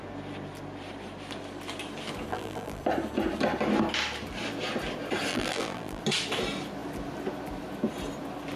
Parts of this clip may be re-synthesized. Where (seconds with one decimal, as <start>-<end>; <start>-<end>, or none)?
2.3-2.8; 5.3-6.0